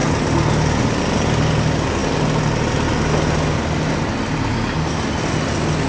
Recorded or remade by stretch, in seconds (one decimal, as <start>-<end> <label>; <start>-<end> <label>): 0.0-5.9 recorded